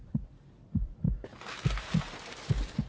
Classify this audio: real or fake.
real